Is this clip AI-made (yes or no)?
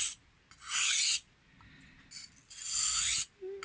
no